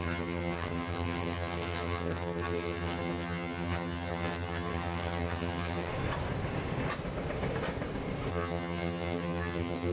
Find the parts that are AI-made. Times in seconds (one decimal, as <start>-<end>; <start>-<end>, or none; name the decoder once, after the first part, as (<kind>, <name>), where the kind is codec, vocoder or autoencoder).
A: 0.0-5.9 (vocoder, HiFi-GAN); 8.3-9.9